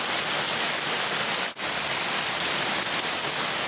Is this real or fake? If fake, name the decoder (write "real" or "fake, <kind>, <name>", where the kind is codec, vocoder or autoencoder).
real